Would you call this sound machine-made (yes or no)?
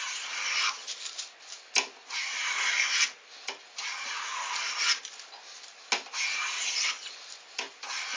no